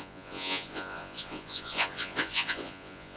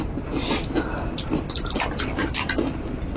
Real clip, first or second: second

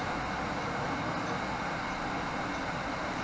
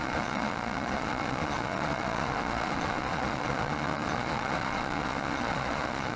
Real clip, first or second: first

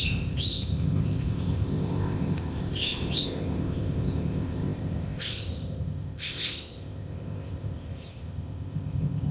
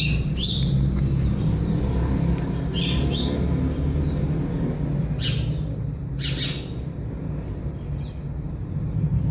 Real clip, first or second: second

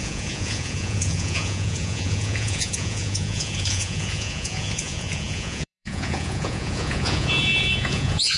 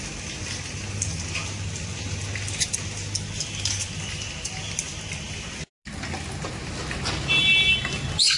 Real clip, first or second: second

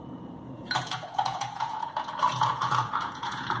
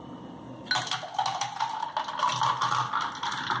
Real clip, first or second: second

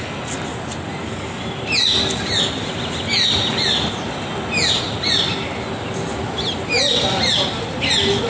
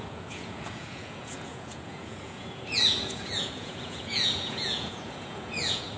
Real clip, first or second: first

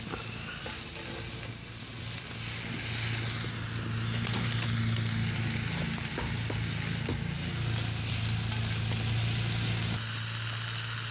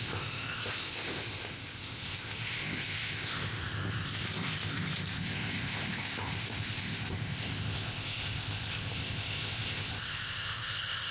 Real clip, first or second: first